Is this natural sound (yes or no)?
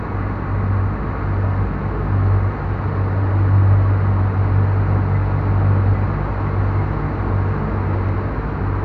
yes